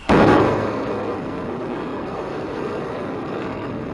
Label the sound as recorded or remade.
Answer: remade